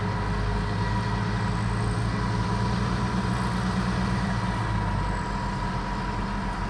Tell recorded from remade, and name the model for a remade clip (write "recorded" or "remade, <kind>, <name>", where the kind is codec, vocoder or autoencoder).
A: recorded